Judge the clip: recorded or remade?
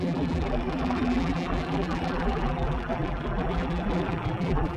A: remade